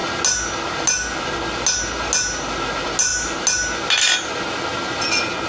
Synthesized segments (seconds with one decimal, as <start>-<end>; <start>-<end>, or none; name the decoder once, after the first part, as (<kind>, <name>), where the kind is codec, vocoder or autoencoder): none

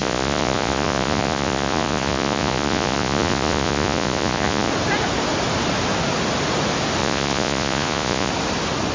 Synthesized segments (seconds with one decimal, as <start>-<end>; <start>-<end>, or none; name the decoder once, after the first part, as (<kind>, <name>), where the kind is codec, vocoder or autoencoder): 0.0-4.7 (vocoder, Vocos); 7.0-8.3

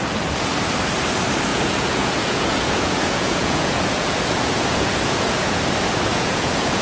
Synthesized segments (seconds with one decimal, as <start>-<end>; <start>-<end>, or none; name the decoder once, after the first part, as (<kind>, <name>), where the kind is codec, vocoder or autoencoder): 1.5-5.6 (vocoder, Vocos); 6.1-6.8